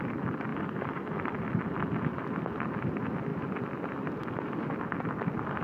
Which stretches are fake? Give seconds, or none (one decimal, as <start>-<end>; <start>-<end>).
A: 3.3-4.6